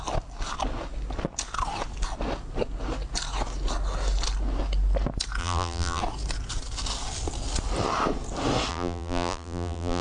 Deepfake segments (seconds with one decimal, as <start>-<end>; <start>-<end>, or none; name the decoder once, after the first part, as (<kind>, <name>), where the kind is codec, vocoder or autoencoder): 5.4-6.0 (vocoder, BigVGAN v2); 8.7-10.0